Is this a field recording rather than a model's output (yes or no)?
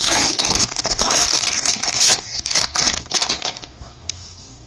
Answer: no